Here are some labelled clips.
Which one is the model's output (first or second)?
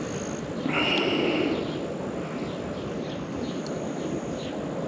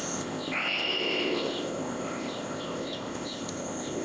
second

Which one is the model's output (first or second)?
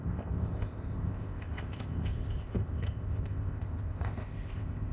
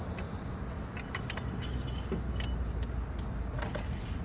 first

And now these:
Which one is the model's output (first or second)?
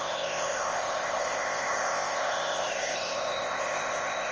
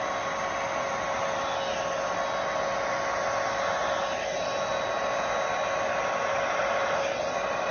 first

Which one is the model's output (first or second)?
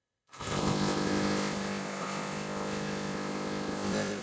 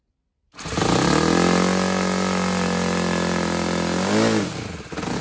first